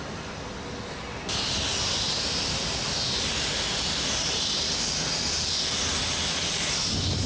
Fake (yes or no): no